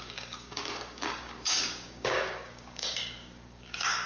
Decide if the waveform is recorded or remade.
remade